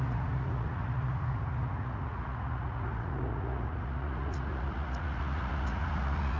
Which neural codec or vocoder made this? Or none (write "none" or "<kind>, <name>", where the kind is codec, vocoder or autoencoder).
vocoder, Vocos